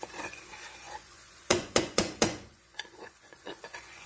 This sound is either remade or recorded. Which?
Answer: remade